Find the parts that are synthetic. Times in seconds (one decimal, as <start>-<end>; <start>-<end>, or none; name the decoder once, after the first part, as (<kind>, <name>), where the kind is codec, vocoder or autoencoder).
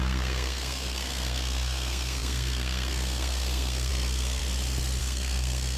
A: 0.0-4.4 (codec, SNAC); 5.0-5.8